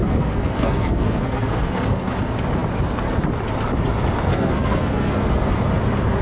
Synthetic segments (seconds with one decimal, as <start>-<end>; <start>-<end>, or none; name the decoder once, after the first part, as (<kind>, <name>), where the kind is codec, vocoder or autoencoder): 0.0-2.1 (codec, SNAC); 4.3-5.3